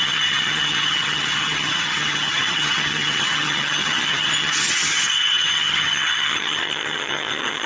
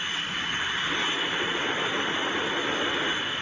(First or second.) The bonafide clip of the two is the second